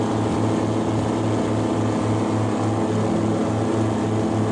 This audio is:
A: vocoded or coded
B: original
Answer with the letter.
B